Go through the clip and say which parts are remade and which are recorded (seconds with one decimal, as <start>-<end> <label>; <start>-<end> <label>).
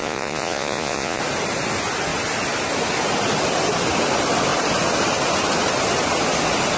0.0-1.2 remade; 1.2-6.8 recorded